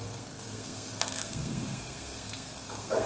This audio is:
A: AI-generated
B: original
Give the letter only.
A